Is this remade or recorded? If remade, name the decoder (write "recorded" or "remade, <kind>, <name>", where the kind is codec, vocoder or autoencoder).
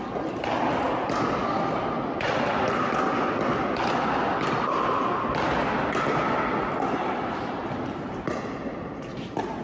recorded